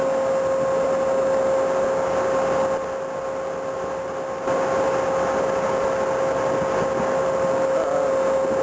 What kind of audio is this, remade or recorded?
recorded